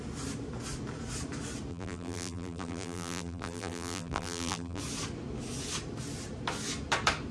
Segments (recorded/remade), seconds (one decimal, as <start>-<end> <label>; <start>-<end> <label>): 0.0-1.7 recorded; 1.7-4.8 remade; 4.8-7.3 recorded